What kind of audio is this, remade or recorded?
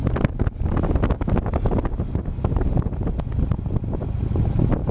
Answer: recorded